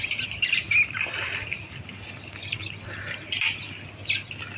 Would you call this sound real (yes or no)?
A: yes